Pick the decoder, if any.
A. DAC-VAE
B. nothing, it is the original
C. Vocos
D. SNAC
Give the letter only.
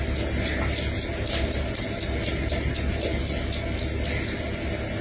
B